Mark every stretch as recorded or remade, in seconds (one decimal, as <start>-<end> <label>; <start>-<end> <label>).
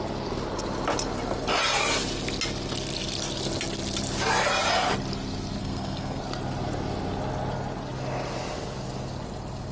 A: 0.0-5.6 recorded; 5.6-6.2 remade; 6.2-9.7 recorded